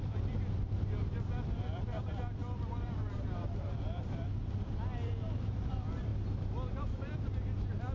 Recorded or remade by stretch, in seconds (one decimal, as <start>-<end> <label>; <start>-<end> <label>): 0.0-6.1 remade; 6.1-6.7 recorded; 6.7-7.9 remade